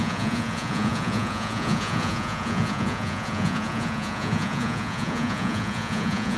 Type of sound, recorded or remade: remade